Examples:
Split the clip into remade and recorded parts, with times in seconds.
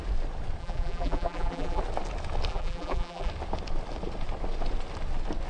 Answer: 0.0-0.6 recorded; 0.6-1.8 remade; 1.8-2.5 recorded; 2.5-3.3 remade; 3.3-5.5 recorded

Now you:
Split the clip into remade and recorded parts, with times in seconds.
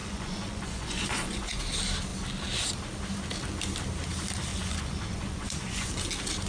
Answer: 0.0-1.6 remade; 1.6-4.5 recorded; 4.5-5.9 remade; 5.9-6.5 recorded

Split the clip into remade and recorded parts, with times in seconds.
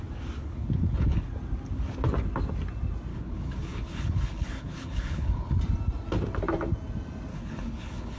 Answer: 0.0-0.4 recorded; 0.4-1.3 remade; 1.3-3.1 recorded; 3.1-5.6 remade; 5.6-7.3 recorded; 7.3-8.2 remade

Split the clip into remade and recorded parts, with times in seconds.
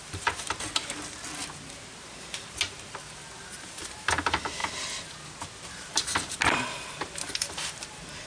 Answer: 0.0-8.3 recorded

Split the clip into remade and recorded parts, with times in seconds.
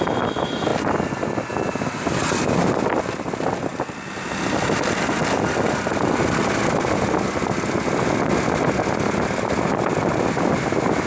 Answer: 0.0-11.1 recorded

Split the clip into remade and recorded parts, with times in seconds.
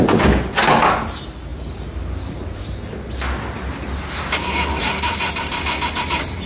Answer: 0.0-6.5 recorded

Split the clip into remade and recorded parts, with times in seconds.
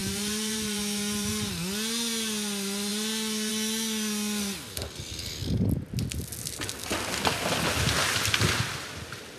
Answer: 0.0-1.5 remade; 1.5-9.4 recorded